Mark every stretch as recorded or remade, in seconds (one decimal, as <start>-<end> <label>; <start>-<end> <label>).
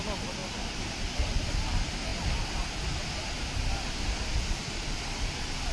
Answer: 0.0-0.4 remade; 0.4-1.4 recorded; 1.4-2.1 remade; 2.1-5.2 recorded; 5.2-5.7 remade